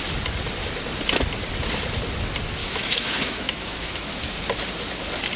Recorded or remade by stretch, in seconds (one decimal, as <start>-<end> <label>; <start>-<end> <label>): 0.0-2.6 recorded; 2.6-4.2 remade; 4.2-5.4 recorded